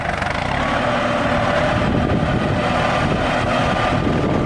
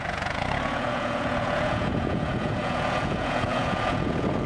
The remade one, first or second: second